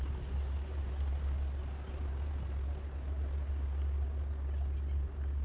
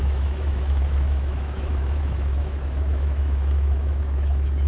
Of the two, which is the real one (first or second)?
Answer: first